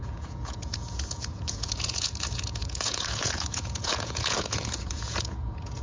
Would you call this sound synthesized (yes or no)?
yes